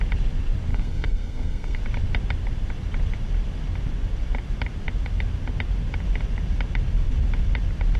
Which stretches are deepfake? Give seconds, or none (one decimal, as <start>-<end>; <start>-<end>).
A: 0.7-1.8